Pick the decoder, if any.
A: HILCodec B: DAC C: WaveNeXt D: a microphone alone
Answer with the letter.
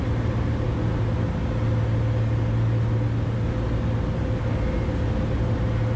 D